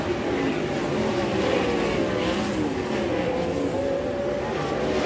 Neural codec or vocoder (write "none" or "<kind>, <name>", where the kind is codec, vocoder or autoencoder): none